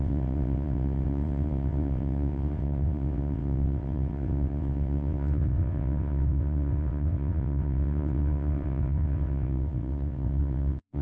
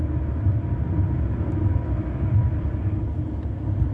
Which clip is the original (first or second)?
second